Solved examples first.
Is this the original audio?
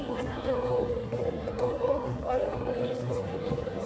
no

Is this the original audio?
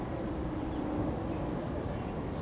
yes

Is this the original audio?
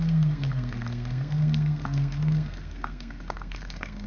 no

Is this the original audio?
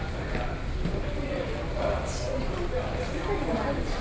yes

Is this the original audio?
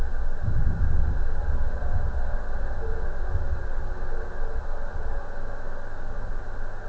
yes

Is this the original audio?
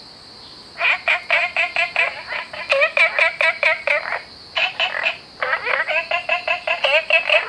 yes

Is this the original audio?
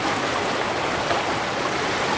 yes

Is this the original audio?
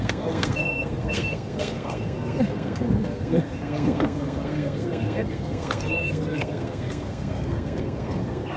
no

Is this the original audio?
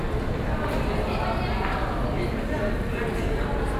yes